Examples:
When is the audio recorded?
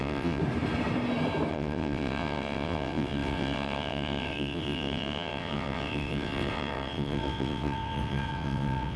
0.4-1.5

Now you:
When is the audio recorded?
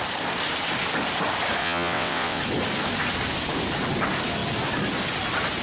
0.0-1.6; 2.4-5.6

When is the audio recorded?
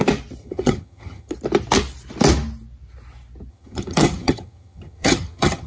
0.0-0.4; 1.3-3.5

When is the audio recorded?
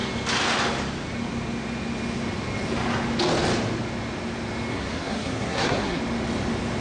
0.0-4.7; 6.0-6.8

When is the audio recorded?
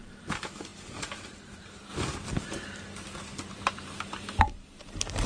1.9-4.4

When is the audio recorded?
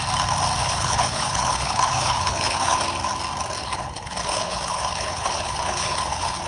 0.0-0.6; 2.8-3.6